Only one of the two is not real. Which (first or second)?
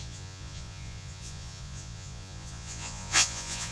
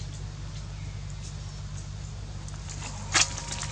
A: first